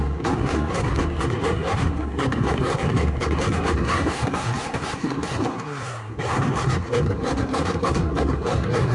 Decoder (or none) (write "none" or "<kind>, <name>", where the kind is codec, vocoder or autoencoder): codec, SNAC